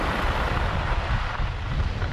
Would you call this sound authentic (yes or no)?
yes